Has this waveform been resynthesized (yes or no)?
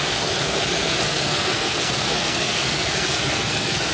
yes